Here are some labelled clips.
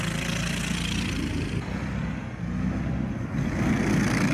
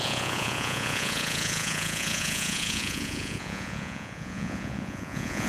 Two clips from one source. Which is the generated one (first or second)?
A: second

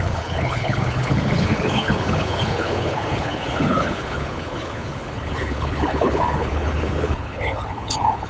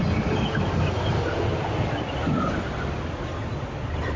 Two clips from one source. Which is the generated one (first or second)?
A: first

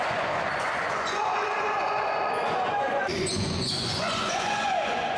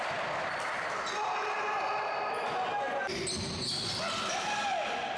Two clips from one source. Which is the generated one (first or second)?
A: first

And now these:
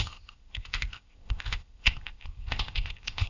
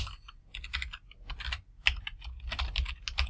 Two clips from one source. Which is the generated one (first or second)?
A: first